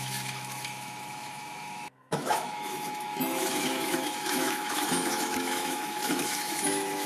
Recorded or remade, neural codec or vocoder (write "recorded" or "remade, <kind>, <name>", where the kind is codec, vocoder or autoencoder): remade, autoencoder, DAC-VAE